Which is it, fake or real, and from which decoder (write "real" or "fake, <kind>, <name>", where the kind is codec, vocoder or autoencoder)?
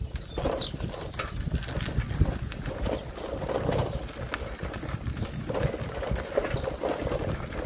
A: real